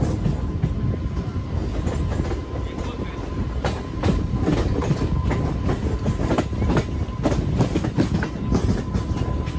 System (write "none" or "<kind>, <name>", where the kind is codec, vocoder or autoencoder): none